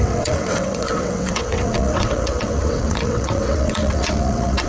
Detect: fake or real fake